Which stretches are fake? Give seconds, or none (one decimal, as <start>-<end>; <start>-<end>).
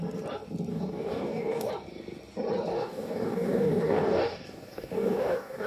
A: 0.7-1.7; 2.7-5.7